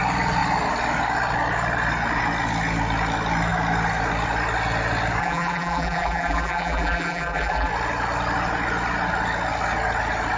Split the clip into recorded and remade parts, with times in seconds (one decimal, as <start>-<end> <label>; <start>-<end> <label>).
0.0-5.2 recorded; 5.2-7.7 remade; 7.7-10.4 recorded